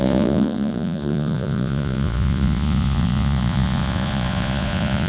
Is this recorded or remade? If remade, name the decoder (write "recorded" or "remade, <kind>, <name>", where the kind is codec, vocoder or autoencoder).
remade, vocoder, Vocos